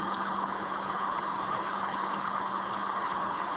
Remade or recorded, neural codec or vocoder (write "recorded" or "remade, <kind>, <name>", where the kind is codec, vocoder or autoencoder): remade, codec, HILCodec